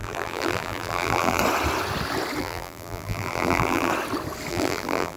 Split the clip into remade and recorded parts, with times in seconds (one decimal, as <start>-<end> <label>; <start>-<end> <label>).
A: 0.0-1.4 remade; 1.4-2.4 recorded; 2.4-3.9 remade; 3.9-4.5 recorded; 4.5-5.2 remade